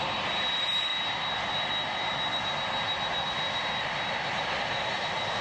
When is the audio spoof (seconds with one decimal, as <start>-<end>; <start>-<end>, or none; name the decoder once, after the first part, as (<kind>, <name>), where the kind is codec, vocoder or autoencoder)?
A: 0.0-0.9 (vocoder, BigVGAN v2); 4.1-5.4